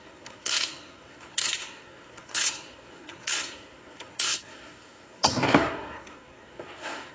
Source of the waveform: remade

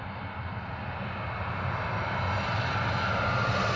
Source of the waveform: recorded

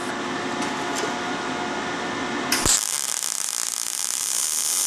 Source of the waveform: recorded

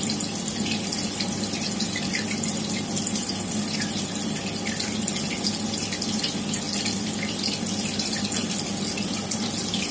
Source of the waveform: recorded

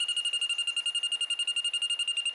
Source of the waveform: recorded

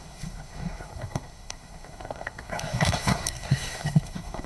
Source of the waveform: remade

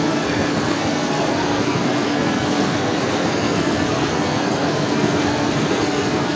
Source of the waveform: remade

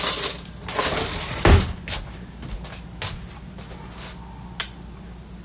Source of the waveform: recorded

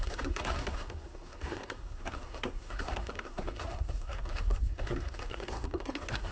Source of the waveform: remade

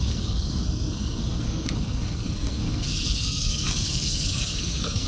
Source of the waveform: remade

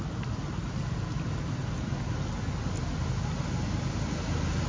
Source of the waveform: recorded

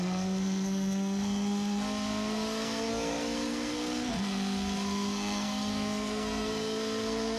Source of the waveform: remade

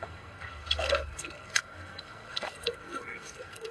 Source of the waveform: remade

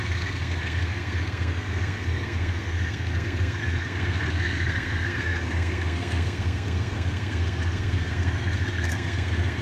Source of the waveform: remade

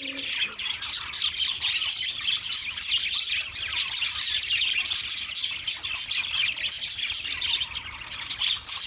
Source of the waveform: recorded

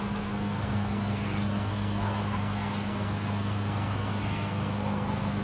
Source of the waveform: remade